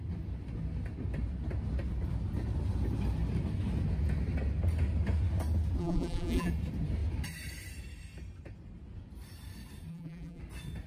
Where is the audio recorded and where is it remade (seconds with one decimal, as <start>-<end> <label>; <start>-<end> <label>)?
0.0-5.8 recorded; 5.8-6.5 remade; 6.5-9.9 recorded; 9.9-10.4 remade; 10.4-10.9 recorded